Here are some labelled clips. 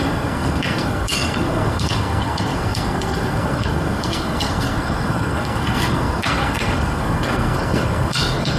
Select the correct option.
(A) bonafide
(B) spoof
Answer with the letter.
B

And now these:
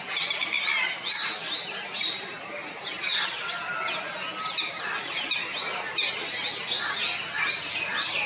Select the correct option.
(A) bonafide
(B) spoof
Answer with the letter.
A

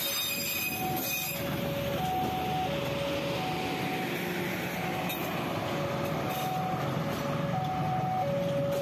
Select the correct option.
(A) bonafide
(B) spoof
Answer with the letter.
A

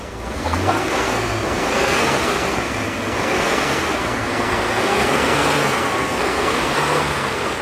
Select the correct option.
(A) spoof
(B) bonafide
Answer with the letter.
A